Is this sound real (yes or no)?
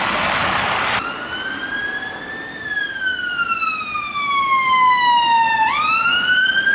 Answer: yes